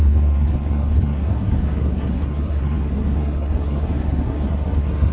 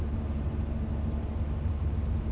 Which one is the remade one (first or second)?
first